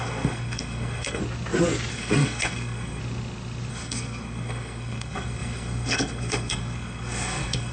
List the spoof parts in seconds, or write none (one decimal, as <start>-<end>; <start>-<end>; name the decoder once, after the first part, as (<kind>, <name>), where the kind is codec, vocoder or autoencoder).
0.0-1.2 (codec, SNAC); 1.9-3.0; 3.7-7.7

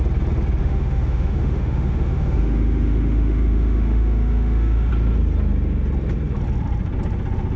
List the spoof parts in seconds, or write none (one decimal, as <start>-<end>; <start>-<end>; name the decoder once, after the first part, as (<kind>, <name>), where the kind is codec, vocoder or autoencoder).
0.6-4.9 (autoencoder, DAC-VAE)

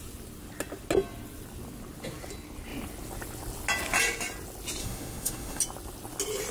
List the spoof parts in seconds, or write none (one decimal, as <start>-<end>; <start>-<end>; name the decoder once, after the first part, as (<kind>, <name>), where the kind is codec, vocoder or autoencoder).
4.8-5.6 (autoencoder, DAC-VAE)

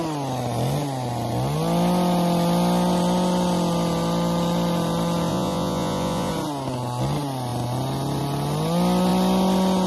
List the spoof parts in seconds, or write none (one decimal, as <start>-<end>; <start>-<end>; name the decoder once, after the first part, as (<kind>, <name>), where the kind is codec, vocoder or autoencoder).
5.3-6.3 (vocoder, Vocos)

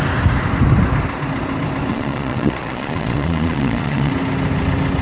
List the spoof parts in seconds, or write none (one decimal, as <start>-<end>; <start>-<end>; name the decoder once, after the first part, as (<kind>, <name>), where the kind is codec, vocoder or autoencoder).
1.9-4.1 (vocoder, Vocos)